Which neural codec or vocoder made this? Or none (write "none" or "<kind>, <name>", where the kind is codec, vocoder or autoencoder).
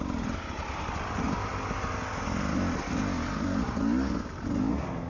none